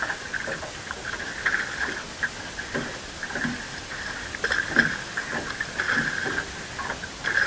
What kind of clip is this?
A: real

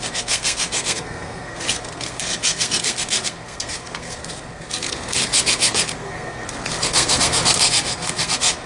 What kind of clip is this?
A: fake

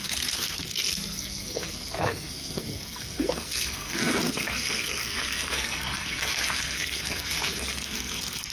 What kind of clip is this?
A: fake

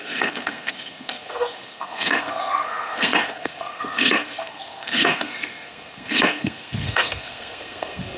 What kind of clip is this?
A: fake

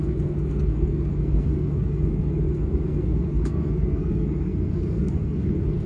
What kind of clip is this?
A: fake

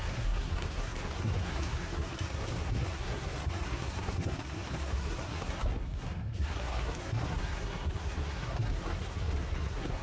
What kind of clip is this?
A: fake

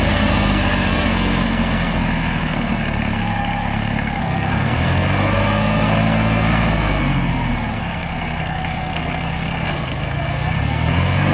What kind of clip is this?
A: fake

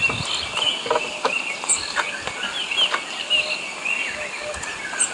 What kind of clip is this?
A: real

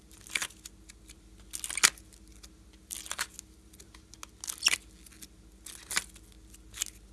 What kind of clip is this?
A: real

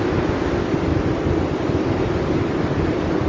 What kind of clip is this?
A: real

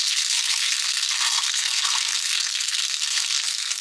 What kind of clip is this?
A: fake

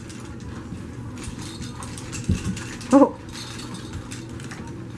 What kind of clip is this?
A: real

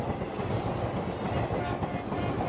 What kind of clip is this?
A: real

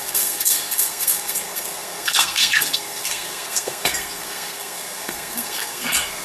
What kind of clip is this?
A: fake